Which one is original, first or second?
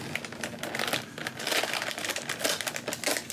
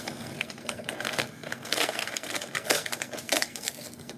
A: first